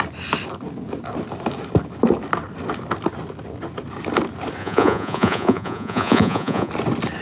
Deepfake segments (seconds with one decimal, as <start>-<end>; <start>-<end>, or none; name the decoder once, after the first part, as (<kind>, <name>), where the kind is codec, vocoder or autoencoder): 4.6-6.7 (vocoder, Vocos)